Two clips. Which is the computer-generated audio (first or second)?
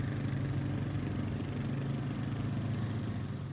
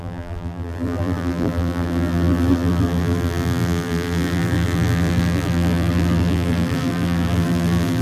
second